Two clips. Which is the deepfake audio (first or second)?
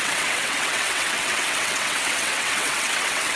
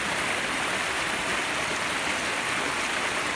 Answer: first